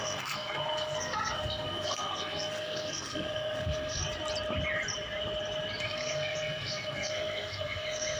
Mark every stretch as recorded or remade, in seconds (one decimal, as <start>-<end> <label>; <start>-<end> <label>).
0.0-4.0 remade; 4.0-5.8 recorded; 5.8-8.2 remade